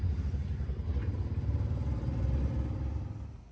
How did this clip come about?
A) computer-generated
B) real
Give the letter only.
B